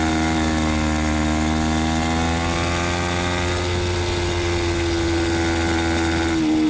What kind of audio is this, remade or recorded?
recorded